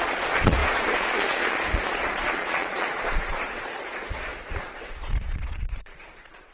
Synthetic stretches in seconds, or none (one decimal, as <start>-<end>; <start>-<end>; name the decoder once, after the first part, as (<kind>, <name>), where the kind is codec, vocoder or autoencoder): 0.0-6.5 (vocoder, Vocos)